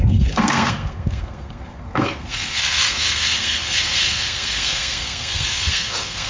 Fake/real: fake